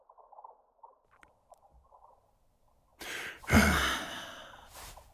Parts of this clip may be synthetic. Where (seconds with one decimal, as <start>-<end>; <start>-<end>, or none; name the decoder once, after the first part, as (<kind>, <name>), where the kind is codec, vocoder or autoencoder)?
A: none